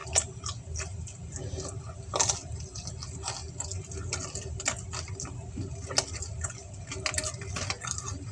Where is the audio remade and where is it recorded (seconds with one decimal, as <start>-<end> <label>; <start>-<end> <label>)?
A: 0.0-8.3 recorded